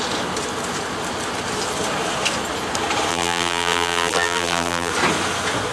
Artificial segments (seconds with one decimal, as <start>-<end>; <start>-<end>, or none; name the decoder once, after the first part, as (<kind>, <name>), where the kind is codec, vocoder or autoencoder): 3.1-4.9 (vocoder, BigVGAN v2)